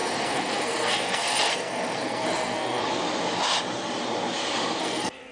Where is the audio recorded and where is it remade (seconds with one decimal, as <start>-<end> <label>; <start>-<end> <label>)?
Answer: 0.0-2.8 remade; 2.8-4.8 recorded; 4.8-5.3 remade